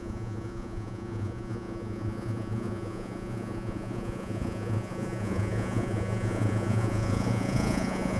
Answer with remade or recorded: remade